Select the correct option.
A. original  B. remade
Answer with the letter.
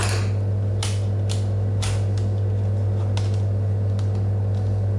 A